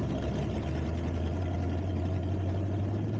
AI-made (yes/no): no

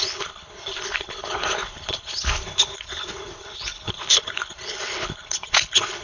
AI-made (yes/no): yes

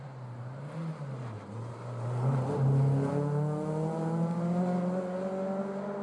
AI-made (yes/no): no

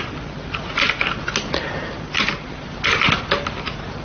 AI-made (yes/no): no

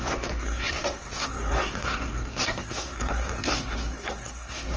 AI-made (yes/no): yes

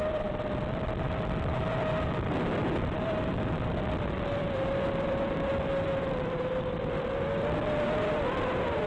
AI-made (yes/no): yes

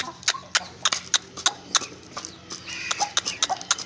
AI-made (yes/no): no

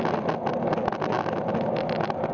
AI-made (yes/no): no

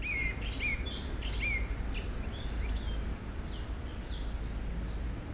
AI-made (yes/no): no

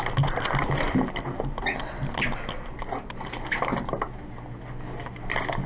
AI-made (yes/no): no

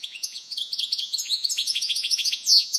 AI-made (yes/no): yes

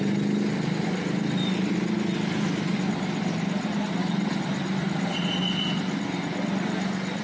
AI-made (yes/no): no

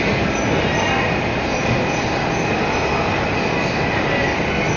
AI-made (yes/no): no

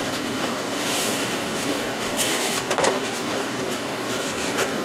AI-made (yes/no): yes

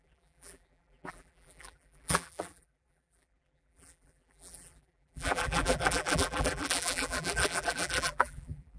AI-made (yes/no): yes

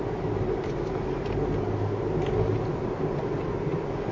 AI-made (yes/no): no